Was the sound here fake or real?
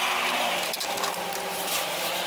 real